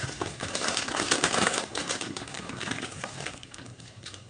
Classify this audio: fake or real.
fake